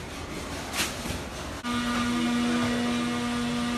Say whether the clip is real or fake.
real